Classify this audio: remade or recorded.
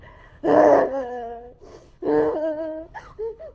remade